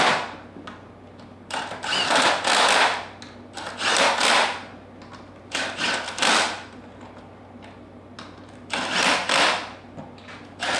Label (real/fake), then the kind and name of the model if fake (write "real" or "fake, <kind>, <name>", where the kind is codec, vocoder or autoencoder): real